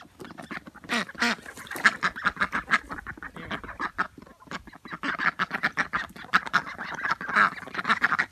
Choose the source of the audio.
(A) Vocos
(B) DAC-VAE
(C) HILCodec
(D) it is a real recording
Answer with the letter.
D